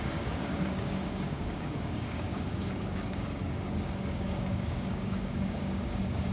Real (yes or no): no